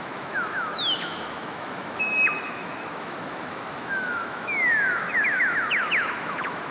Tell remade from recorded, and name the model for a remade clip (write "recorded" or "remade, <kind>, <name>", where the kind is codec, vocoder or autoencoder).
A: remade, autoencoder, DAC-VAE